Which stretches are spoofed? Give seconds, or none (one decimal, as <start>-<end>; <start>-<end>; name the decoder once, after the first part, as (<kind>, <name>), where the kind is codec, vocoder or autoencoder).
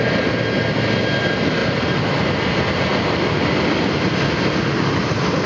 none